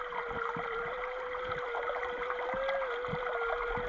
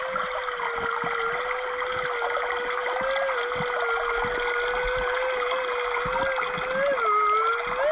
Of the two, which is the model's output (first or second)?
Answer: first